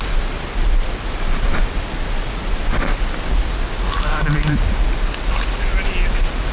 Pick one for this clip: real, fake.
real